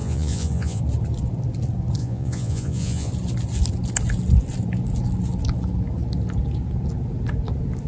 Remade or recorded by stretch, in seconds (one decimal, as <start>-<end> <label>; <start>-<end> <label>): 0.0-0.8 remade; 0.8-2.0 recorded; 2.0-3.1 remade; 3.1-7.9 recorded